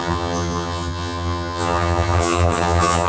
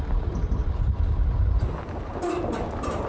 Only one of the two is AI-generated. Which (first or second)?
first